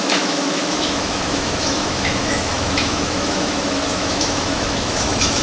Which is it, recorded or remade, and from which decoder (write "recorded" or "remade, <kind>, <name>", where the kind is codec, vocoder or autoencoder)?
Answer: remade, autoencoder, DAC-VAE